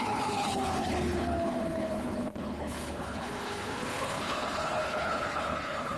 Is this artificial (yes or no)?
yes